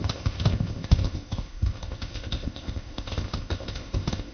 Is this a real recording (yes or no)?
no